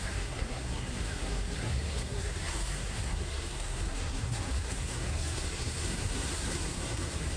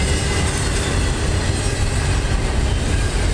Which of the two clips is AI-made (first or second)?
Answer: first